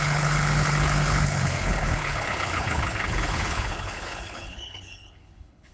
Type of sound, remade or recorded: remade